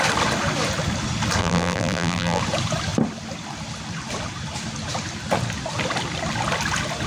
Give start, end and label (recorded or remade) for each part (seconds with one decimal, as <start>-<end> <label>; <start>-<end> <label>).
0.0-1.4 recorded; 1.4-2.4 remade; 2.4-7.1 recorded